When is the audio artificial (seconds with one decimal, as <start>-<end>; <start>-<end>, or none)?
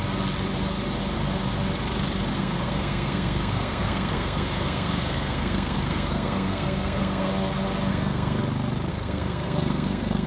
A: 2.3-7.3; 7.9-8.4; 8.9-10.3